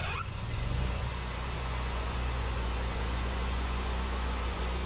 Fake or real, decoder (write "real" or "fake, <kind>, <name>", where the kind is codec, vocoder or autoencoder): fake, vocoder, Vocos